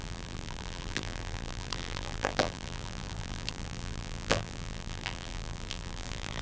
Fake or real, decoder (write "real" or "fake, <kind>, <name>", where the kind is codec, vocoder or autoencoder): fake, vocoder, BigVGAN v2